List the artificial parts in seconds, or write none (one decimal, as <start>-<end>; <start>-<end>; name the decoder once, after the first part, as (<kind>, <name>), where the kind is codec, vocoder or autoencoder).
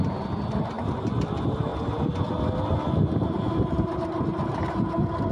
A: none